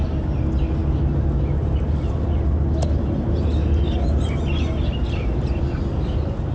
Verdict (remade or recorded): recorded